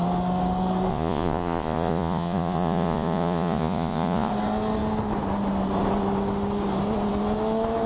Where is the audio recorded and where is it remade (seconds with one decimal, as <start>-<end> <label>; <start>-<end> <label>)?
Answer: 0.0-0.9 recorded; 0.9-4.3 remade; 4.3-7.9 recorded